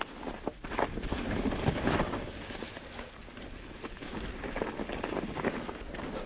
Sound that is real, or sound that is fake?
real